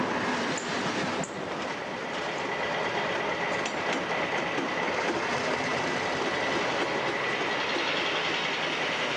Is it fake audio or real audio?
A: real